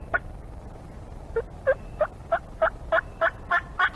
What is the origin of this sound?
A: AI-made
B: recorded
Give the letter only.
B